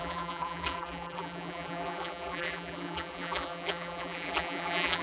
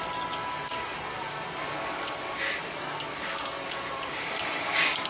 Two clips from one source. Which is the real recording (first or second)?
second